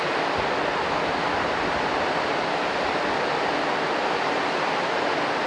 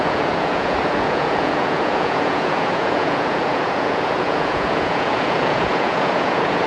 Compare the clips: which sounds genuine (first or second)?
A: first